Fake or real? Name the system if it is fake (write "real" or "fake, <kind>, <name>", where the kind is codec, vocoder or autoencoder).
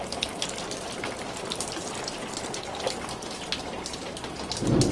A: real